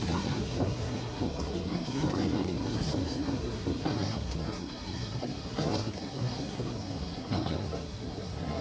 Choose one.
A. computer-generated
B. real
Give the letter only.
A